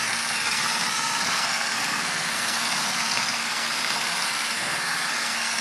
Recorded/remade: remade